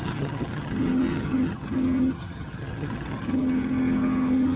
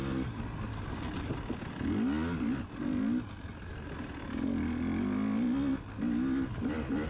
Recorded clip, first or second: second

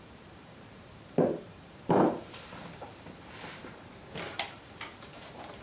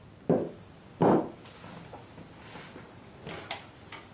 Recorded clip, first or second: second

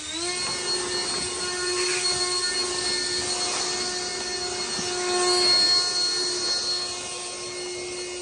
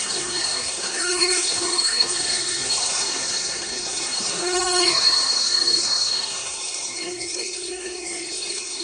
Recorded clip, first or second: first